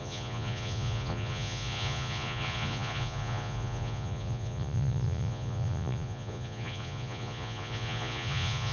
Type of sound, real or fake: fake